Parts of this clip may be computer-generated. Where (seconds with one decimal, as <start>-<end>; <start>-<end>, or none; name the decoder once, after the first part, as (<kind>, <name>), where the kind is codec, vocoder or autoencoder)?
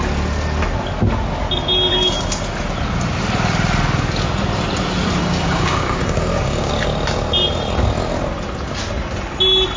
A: 5.2-6.7 (codec, DAC)